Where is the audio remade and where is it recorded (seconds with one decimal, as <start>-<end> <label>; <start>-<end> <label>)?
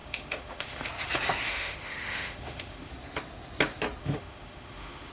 0.0-0.9 remade; 0.9-1.5 recorded; 1.5-2.9 remade; 2.9-4.0 recorded; 4.0-5.1 remade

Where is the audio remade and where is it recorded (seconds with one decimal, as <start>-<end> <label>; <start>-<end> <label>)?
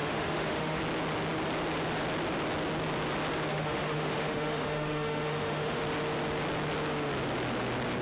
0.0-0.8 remade; 0.8-3.5 recorded; 3.5-5.8 remade; 5.8-8.0 recorded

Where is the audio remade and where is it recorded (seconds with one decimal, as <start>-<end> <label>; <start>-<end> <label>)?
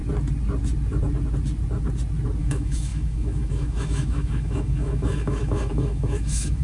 0.0-2.4 recorded; 2.4-6.6 remade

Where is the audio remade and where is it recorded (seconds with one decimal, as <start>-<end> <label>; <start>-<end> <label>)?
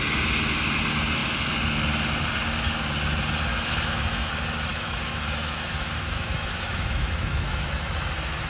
0.0-3.5 recorded; 3.5-4.3 remade; 4.3-4.7 recorded; 4.7-8.1 remade; 8.1-8.5 recorded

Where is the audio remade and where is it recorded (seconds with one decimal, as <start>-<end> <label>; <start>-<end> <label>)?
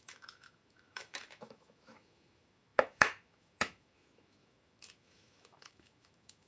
0.0-6.5 remade